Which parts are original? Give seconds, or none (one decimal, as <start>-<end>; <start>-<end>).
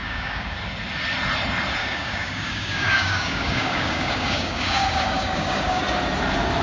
0.6-1.8; 5.8-6.6